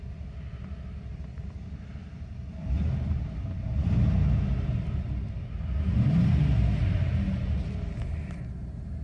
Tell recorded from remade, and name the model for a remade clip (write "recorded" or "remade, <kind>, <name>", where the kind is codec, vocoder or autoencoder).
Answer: recorded